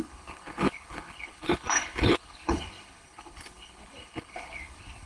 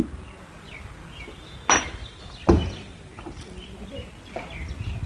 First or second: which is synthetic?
first